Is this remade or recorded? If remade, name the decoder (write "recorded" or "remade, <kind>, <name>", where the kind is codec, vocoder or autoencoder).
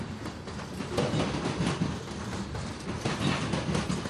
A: recorded